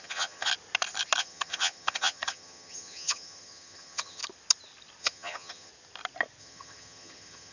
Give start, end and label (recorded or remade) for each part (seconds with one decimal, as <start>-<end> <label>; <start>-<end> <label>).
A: 0.0-0.5 remade; 0.5-1.2 recorded; 1.2-4.2 remade; 4.2-5.0 recorded; 5.0-5.7 remade; 5.7-6.4 recorded; 6.4-7.5 remade

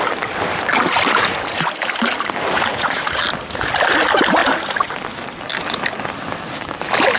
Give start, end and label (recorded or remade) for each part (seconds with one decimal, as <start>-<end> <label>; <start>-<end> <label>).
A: 0.0-2.7 recorded; 2.7-3.2 remade; 3.2-7.2 recorded

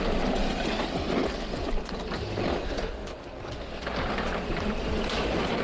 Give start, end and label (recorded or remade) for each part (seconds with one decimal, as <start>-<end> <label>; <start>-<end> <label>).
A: 0.0-3.0 recorded; 3.0-5.6 remade

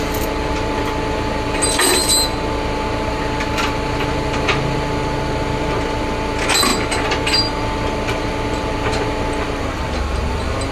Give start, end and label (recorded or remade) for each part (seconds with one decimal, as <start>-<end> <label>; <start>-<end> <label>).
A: 0.0-10.7 recorded

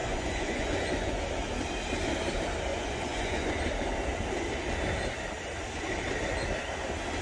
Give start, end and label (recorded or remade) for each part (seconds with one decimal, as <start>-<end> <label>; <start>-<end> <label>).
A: 0.0-1.2 remade; 1.2-2.7 recorded; 2.7-3.6 remade; 3.6-7.2 recorded

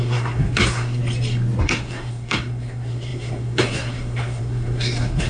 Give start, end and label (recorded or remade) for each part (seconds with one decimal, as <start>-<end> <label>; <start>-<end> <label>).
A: 0.0-1.0 remade; 1.0-1.6 recorded; 1.6-5.3 remade

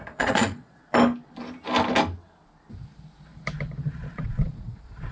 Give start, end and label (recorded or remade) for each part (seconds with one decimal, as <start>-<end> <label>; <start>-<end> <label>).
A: 0.0-0.8 remade; 0.8-3.8 recorded; 3.8-5.1 remade